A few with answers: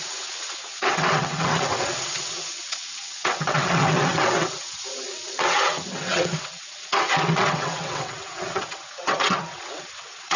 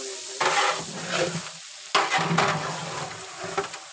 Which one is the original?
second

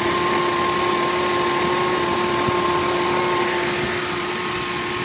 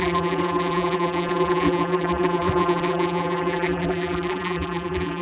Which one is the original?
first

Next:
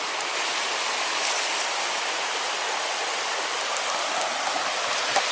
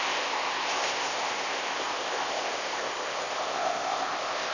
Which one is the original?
first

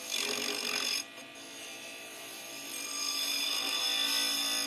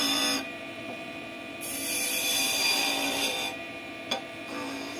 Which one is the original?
first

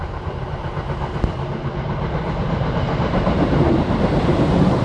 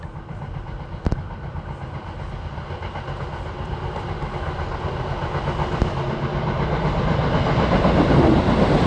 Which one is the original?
second